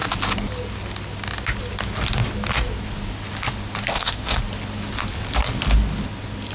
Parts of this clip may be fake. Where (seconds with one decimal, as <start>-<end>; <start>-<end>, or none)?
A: 3.9-4.4